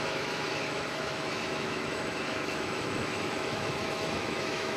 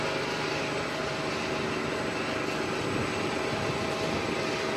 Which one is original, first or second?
second